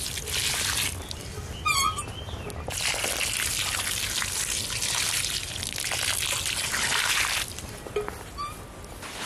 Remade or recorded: recorded